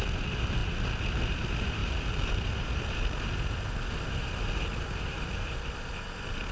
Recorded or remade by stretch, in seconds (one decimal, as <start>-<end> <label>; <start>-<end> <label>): 0.0-6.5 recorded